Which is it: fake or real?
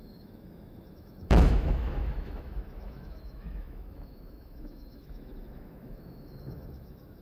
fake